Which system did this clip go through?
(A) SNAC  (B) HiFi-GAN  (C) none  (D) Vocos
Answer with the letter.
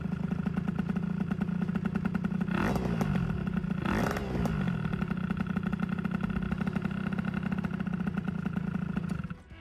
C